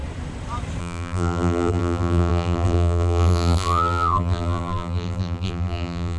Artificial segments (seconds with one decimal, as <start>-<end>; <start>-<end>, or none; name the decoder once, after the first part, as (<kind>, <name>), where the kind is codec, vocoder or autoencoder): 0.8-6.2 (vocoder, BigVGAN v2)